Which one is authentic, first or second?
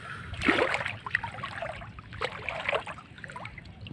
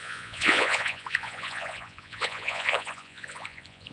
first